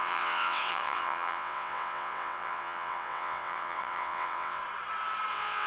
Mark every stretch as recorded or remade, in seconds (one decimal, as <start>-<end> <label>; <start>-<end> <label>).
0.0-4.6 remade; 4.6-5.3 recorded; 5.3-5.7 remade